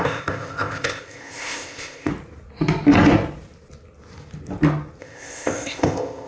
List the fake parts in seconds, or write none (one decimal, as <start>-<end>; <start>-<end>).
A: 0.0-2.1; 5.0-6.3